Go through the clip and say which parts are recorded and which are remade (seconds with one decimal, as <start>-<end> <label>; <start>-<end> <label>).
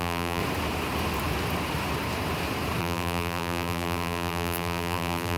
0.0-0.4 remade; 0.4-2.8 recorded; 2.8-5.4 remade